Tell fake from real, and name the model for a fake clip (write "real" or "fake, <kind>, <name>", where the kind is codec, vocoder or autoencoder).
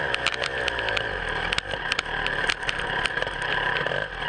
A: real